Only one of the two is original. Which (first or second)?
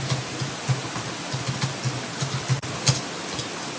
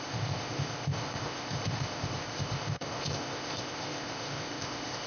first